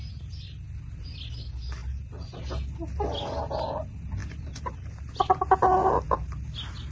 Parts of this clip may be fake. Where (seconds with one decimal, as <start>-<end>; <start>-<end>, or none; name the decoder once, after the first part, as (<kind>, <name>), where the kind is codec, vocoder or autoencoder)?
none